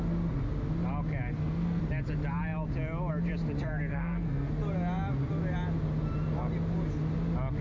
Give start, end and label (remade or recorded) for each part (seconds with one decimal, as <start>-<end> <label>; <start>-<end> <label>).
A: 0.0-1.3 recorded; 1.3-1.8 remade; 1.8-3.9 recorded; 3.9-4.5 remade; 4.5-7.6 recorded